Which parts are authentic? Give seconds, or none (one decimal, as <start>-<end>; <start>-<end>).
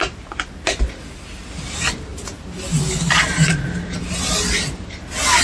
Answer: 0.0-5.4